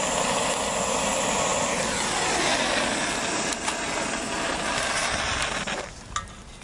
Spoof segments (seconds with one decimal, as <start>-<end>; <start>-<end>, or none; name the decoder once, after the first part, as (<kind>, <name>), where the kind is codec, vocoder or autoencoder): none